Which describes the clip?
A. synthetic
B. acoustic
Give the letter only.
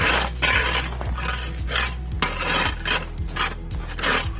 B